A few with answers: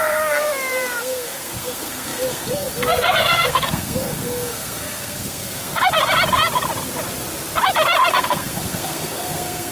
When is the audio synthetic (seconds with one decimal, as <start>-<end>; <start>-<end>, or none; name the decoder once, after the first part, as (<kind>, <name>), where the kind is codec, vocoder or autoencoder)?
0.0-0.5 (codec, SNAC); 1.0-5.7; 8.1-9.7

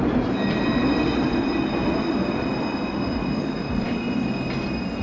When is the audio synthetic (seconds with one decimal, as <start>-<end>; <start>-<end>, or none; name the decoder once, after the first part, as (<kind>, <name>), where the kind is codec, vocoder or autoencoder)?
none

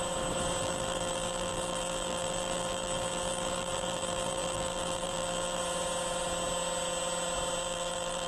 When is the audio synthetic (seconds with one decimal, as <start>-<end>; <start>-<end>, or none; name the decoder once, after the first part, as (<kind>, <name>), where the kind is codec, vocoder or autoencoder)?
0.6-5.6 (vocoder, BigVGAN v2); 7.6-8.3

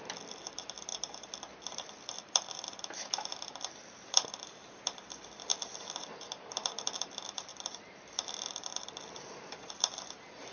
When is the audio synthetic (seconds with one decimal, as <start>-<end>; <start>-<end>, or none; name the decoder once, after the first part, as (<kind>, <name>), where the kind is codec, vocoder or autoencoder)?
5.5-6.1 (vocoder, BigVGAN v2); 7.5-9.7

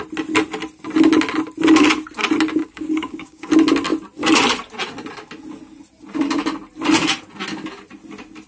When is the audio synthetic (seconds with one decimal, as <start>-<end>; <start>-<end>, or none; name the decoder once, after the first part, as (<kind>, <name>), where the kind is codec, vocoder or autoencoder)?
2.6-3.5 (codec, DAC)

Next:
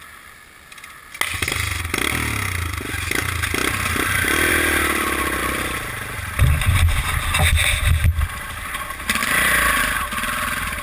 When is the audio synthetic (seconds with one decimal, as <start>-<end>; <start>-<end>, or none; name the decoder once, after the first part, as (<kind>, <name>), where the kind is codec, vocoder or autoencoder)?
none